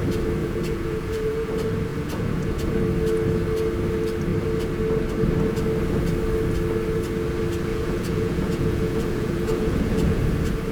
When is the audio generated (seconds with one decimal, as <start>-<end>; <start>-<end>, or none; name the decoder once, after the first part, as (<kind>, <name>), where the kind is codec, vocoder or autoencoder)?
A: 0.4-1.5 (vocoder, Vocos); 1.9-2.8; 7.7-10.2